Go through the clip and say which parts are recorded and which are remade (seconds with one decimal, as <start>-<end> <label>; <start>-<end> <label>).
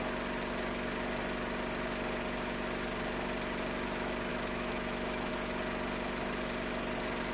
0.0-4.3 recorded; 4.3-5.3 remade; 5.3-7.3 recorded